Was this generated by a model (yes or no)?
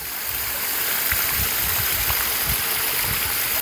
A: no